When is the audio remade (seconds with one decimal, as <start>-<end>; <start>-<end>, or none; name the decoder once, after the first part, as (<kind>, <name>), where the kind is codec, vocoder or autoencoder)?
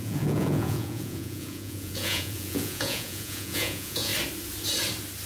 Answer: 0.0-4.1 (vocoder, Vocos)